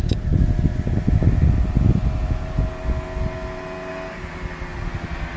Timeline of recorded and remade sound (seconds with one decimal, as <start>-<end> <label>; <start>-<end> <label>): 0.0-5.4 recorded